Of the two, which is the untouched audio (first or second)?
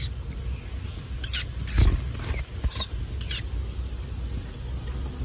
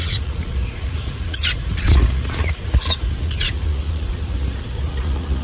first